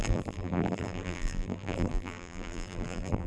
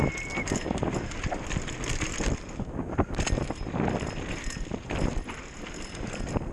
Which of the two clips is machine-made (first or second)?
first